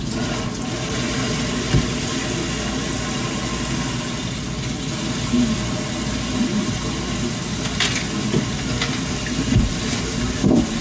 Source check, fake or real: real